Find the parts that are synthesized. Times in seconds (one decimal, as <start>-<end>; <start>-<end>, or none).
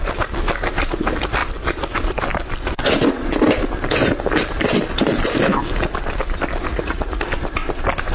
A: 6.7-7.2